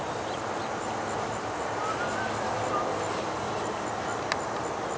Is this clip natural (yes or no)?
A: yes